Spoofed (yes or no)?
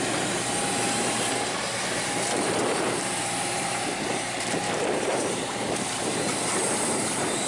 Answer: yes